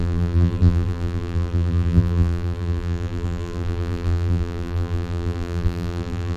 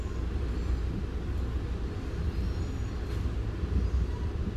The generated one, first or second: first